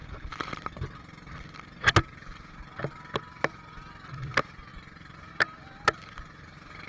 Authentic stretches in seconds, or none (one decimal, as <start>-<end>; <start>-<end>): 0.0-6.9